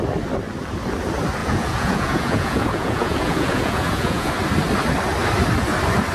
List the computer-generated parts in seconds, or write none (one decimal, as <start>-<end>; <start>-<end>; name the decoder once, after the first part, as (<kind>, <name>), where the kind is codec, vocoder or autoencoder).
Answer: 1.4-4.3 (vocoder, Vocos)